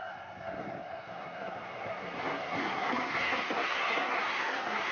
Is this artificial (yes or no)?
yes